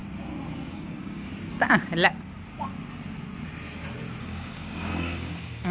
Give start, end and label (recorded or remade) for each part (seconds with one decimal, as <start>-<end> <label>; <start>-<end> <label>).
0.0-0.7 recorded; 0.7-1.3 remade; 1.3-4.2 recorded; 4.2-5.7 remade